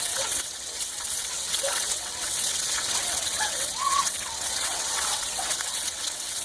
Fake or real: fake